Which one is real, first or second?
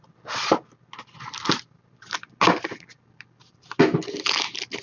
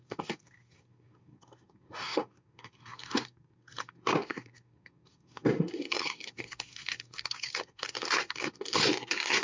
first